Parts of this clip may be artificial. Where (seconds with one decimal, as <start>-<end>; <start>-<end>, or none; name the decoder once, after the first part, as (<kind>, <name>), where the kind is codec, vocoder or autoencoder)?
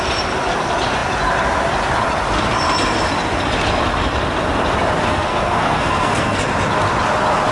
5.1-6.4 (codec, SNAC)